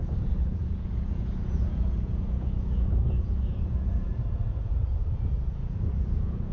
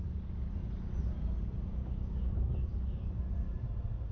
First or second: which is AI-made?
first